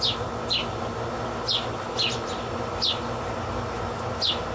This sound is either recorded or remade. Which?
recorded